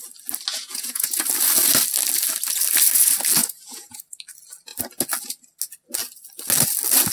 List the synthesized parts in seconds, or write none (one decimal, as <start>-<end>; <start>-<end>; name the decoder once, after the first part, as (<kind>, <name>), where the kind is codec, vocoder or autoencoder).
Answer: 0.5-1.2 (vocoder, Vocos); 3.4-4.2